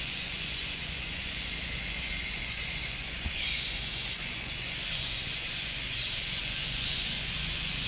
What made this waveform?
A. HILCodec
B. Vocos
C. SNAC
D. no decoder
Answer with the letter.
B